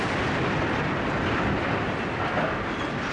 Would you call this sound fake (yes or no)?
no